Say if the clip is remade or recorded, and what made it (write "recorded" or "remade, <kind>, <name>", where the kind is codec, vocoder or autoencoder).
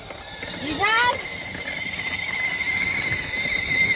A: recorded